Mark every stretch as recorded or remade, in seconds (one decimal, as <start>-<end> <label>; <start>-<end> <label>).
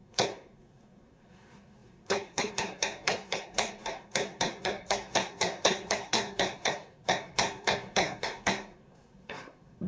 0.0-9.9 remade